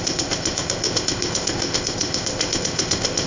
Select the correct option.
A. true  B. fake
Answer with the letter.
B